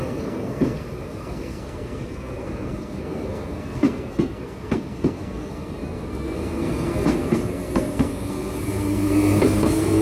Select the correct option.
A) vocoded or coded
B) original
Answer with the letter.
A